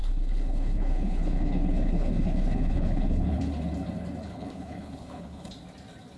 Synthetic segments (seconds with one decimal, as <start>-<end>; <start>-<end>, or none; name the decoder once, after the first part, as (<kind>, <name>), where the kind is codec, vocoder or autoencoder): 0.0-3.4 (codec, HILCodec); 4.2-5.5